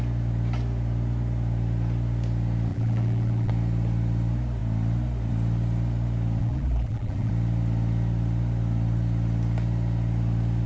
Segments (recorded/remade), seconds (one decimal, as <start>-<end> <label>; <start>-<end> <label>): 0.0-2.7 recorded; 2.7-3.5 remade; 3.5-6.4 recorded; 6.4-7.3 remade; 7.3-10.7 recorded